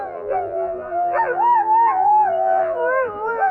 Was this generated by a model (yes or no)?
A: yes